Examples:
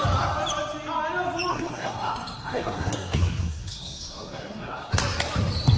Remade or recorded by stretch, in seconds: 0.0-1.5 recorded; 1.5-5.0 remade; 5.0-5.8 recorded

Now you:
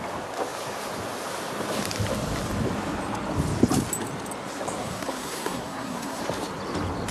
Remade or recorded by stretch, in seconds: 0.0-4.8 recorded; 4.8-6.2 remade; 6.2-7.1 recorded